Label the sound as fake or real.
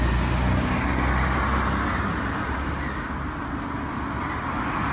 real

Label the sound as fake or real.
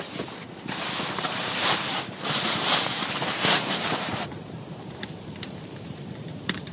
fake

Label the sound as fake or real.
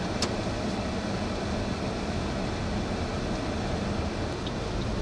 real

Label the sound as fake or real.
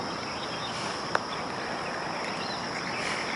real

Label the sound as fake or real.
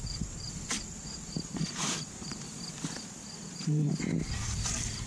fake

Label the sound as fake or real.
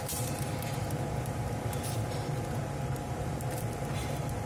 fake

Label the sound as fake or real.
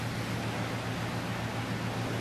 real